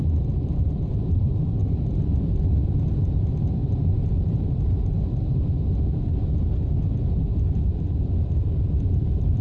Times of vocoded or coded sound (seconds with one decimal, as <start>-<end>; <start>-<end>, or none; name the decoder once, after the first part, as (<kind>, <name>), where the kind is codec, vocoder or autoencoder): 0.0-6.2 (vocoder, BigVGAN v2); 7.6-9.4